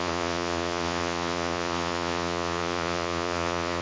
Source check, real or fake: fake